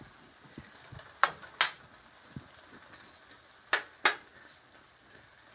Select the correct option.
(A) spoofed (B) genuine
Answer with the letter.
B